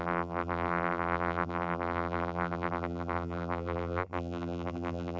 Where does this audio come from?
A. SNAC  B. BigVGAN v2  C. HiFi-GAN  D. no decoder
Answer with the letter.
B